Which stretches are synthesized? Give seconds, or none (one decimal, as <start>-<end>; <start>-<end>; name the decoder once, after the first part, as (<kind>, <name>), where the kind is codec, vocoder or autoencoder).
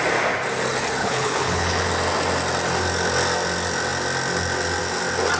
1.0-1.9 (codec, HILCodec)